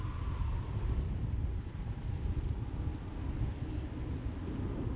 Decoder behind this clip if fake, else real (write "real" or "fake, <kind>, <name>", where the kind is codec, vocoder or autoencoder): real